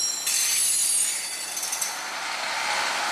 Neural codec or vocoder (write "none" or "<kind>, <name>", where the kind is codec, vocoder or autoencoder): none